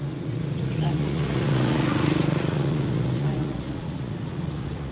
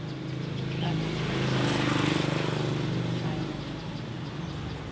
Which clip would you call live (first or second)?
second